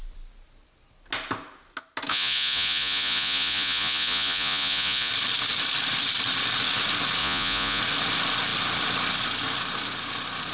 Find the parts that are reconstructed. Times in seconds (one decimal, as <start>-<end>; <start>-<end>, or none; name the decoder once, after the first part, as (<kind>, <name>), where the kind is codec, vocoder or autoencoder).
2.1-5.1 (vocoder, Vocos); 7.2-7.8